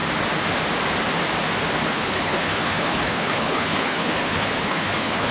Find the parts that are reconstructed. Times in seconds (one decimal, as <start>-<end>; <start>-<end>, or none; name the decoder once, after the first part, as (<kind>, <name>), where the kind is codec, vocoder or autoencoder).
1.9-5.3 (codec, HILCodec)